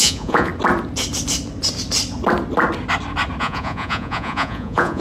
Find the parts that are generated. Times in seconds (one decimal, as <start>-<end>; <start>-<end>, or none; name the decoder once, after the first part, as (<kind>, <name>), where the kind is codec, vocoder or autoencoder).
0.0-0.5 (vocoder, Vocos); 3.4-5.0